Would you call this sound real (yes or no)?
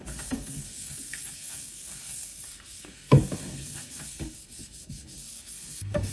no